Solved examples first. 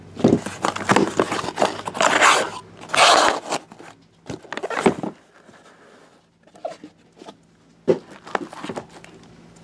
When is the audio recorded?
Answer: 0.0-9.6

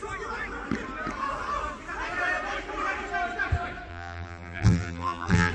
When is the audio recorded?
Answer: 0.0-3.9

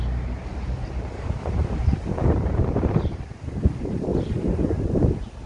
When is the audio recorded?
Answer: 0.0-0.8; 3.2-4.1; 5.1-5.5

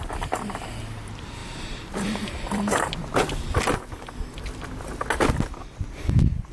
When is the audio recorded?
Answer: 0.0-1.4; 3.6-6.5

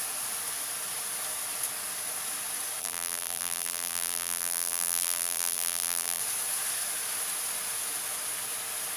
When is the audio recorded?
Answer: 0.0-2.8; 6.2-9.0

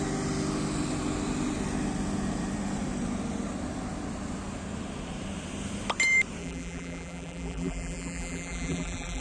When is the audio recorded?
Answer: 0.0-6.4

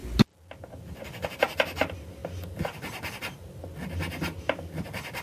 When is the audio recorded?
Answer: 0.0-5.2